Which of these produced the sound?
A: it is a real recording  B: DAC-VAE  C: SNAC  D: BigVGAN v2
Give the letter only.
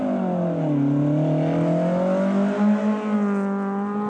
A